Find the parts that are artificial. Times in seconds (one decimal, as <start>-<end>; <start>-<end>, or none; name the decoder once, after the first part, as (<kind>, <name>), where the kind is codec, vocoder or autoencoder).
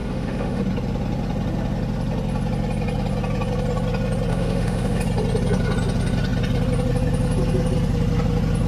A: 0.0-0.6 (autoencoder, DAC-VAE); 4.3-5.0